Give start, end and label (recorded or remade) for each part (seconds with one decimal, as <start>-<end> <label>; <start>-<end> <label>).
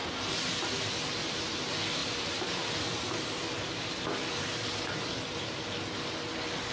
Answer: 0.0-0.6 remade; 0.6-2.0 recorded; 2.0-6.0 remade; 6.0-6.7 recorded